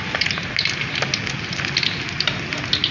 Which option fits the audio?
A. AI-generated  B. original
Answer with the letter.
B